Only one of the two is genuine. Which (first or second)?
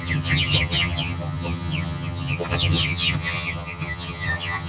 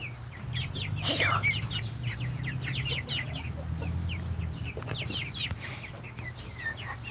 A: second